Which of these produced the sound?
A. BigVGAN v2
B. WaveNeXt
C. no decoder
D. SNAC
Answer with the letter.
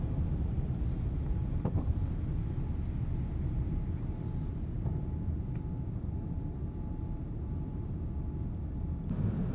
C